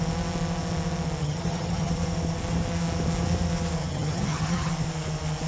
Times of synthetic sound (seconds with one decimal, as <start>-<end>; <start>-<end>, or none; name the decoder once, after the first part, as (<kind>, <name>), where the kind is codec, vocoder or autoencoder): 1.2-1.9 (vocoder, HiFi-GAN); 3.8-4.7